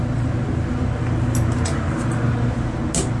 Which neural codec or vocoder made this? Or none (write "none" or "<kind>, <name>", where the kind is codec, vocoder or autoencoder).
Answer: none